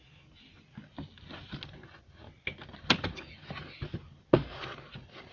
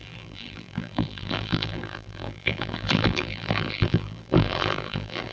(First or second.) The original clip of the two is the first